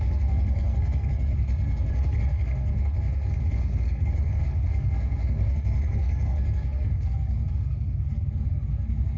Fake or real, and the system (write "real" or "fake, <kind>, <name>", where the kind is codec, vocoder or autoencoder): fake, codec, SNAC